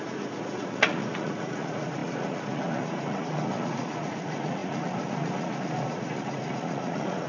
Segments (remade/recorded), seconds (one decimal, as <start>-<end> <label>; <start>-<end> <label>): 0.0-7.3 remade